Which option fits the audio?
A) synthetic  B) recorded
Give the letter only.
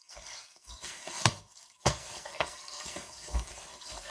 A